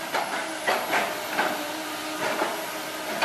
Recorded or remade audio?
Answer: recorded